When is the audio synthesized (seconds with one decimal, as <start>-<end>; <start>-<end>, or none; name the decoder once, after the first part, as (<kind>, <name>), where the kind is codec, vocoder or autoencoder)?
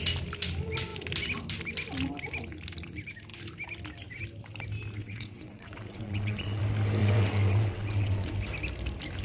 5.0-6.6 (vocoder, WaveNeXt); 7.0-8.3